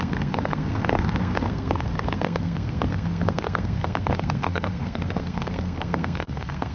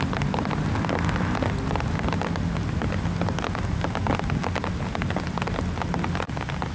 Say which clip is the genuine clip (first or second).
second